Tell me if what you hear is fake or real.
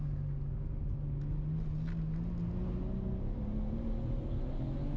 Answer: real